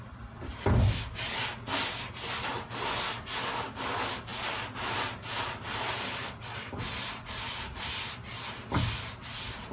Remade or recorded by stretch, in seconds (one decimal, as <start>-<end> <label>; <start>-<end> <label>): 0.0-9.7 recorded